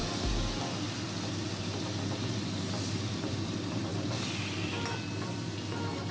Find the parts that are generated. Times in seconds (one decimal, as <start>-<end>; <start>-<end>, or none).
none